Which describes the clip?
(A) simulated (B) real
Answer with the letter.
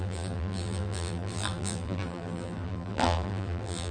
A